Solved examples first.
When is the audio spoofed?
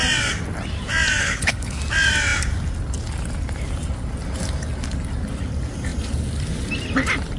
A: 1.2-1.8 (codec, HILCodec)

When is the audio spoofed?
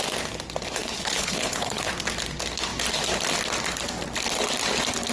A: 0.8-1.9 (codec, HILCodec)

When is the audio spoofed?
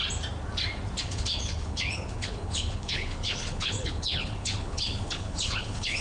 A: 1.0-6.0 (codec, HILCodec)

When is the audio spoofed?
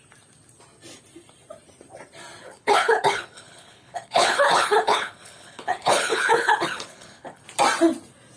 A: 2.4-7.4 (codec, HILCodec)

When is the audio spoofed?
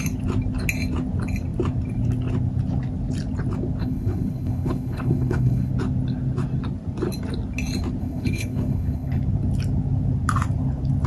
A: 3.8-5.7 (codec, HILCodec); 8.0-9.2